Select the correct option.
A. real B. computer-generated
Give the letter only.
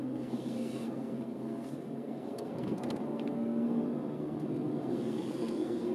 B